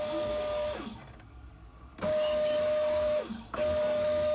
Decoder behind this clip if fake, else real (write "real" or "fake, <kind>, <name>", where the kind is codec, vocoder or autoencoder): fake, codec, DAC